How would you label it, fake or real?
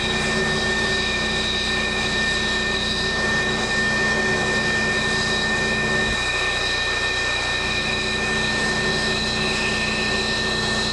real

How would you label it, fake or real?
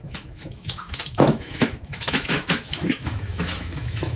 fake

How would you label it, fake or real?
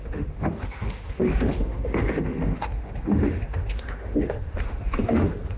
fake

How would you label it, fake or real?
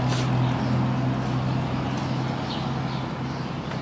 real